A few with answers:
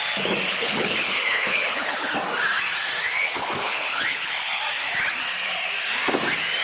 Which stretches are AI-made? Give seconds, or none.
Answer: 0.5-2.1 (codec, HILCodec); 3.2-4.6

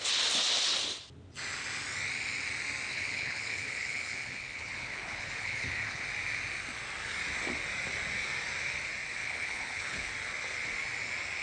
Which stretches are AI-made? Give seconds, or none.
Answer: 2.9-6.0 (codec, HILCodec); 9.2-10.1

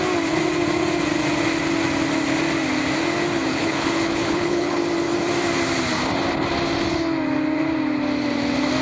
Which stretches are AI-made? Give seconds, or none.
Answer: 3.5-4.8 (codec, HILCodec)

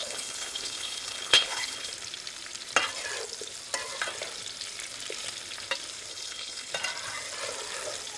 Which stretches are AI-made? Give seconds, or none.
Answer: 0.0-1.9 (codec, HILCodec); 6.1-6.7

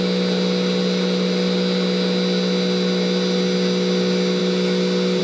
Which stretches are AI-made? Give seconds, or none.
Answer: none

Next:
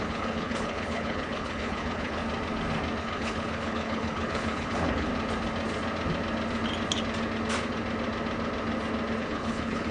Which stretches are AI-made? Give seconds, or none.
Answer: 0.0-2.2 (codec, HILCodec); 3.0-5.1; 9.2-9.9

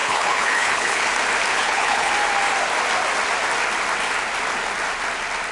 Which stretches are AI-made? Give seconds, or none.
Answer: 0.0-1.1 (codec, HILCodec); 1.5-2.1